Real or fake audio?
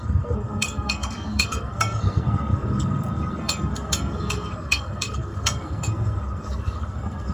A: fake